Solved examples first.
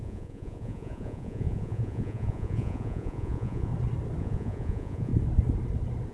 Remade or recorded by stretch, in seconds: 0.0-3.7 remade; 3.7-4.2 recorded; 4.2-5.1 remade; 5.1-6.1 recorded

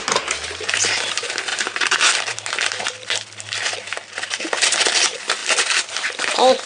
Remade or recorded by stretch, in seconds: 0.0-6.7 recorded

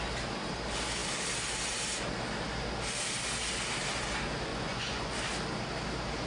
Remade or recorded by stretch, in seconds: 0.0-4.5 recorded; 4.5-5.1 remade; 5.1-6.3 recorded

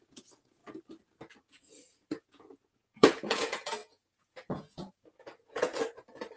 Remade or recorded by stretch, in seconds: 0.0-0.6 remade; 0.6-1.4 recorded; 1.4-5.7 remade; 5.7-6.4 recorded

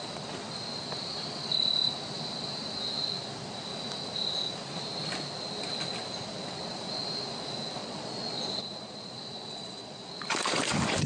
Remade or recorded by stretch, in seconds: 0.0-7.8 recorded; 7.8-10.1 remade; 10.1-11.1 recorded

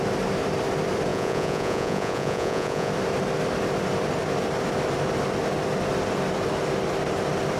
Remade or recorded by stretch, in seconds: 0.0-1.1 recorded; 1.1-2.9 remade; 2.9-7.6 recorded